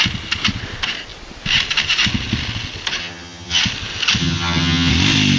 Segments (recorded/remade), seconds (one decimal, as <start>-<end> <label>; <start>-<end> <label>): 0.0-3.0 recorded; 3.0-3.6 remade; 3.6-4.2 recorded; 4.2-4.9 remade; 4.9-5.4 recorded